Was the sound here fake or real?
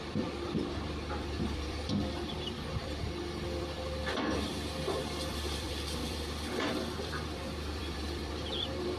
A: fake